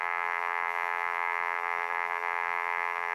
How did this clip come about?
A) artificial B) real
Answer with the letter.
A